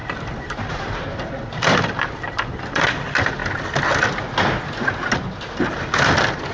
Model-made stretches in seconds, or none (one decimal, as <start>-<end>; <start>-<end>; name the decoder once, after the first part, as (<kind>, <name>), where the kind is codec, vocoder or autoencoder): 0.0-3.4 (vocoder, BigVGAN v2); 5.7-6.5